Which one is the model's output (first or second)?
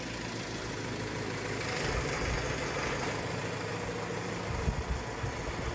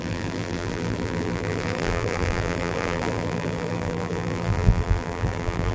second